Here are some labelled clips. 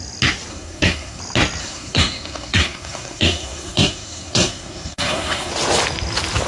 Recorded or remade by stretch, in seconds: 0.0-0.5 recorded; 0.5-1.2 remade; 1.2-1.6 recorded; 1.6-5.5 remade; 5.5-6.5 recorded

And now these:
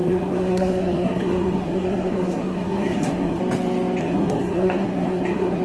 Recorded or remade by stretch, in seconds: 0.0-3.4 remade; 3.4-4.0 recorded; 4.0-5.6 remade

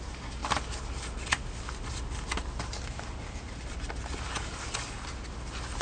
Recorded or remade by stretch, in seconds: 0.0-5.8 recorded

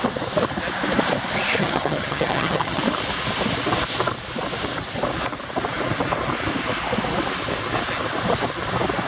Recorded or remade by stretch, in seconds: 0.0-1.6 recorded; 1.6-2.8 remade; 2.8-9.1 recorded

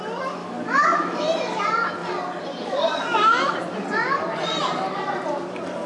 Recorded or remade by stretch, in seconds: 0.0-0.4 recorded; 0.4-1.6 remade; 1.6-5.9 recorded